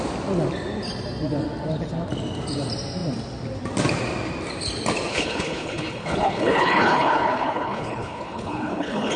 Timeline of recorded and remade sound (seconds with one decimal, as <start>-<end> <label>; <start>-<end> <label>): 0.0-5.1 recorded; 5.1-9.2 remade